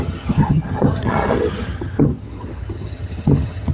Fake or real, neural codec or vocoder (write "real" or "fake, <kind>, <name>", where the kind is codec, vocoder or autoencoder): fake, vocoder, HiFi-GAN